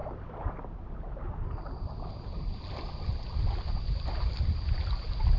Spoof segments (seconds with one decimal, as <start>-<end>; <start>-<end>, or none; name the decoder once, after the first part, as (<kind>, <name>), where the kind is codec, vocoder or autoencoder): none